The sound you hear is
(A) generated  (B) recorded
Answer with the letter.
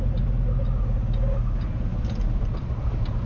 B